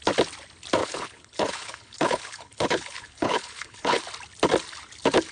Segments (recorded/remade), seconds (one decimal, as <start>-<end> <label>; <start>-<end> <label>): 0.0-0.8 recorded; 0.8-4.0 remade; 4.0-5.3 recorded